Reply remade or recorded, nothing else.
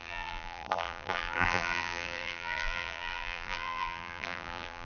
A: remade